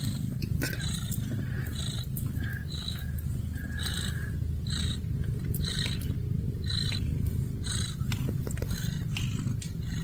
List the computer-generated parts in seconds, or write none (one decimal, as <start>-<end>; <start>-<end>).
2.5-3.1